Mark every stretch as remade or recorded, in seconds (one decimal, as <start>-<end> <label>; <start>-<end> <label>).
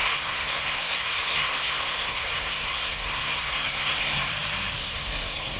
0.0-4.3 remade; 4.3-4.8 recorded; 4.8-5.6 remade